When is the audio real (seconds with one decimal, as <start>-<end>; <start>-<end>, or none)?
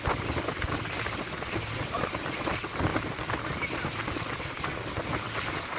0.0-5.8